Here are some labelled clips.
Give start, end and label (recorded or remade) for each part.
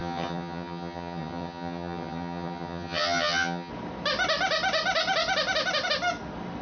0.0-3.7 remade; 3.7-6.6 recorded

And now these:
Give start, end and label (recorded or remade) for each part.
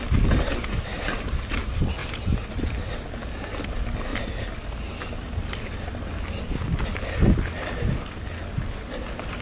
0.0-9.4 recorded